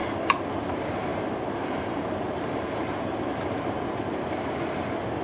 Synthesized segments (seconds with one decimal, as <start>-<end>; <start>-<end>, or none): 0.7-5.2